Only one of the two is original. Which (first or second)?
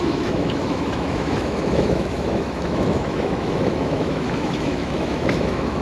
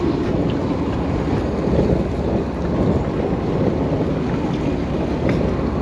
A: second